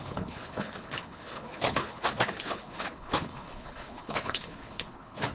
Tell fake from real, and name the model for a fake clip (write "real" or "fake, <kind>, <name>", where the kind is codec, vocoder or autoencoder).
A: fake, codec, HILCodec